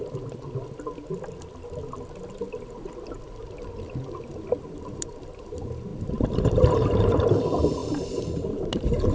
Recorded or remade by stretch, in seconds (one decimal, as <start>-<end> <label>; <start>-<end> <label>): 0.0-4.6 recorded; 4.6-9.1 remade